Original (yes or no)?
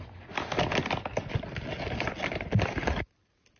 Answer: yes